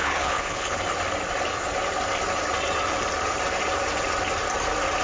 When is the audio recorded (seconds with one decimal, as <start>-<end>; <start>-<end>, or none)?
0.8-5.0